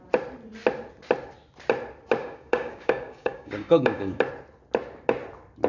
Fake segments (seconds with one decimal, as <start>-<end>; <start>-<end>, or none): 2.2-4.2